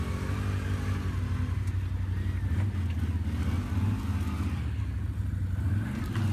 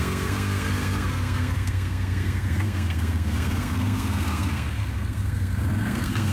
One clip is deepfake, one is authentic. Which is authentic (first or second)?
first